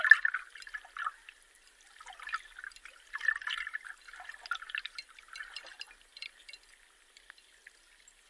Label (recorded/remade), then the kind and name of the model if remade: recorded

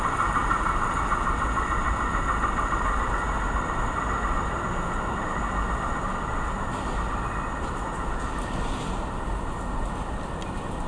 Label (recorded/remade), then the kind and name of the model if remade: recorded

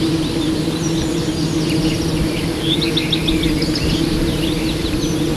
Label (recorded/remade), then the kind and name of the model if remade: recorded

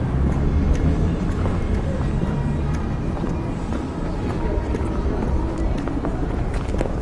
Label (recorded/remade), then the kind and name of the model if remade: recorded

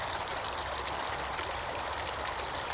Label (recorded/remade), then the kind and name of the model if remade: recorded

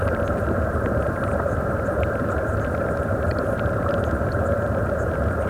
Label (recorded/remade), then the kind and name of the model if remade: remade, vocoder, BigVGAN v2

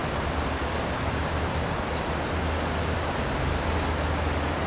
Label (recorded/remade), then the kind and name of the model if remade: recorded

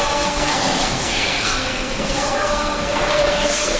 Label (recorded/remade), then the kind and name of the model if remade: remade, codec, SNAC